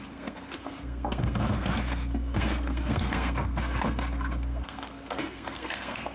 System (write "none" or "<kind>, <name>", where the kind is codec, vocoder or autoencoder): codec, SNAC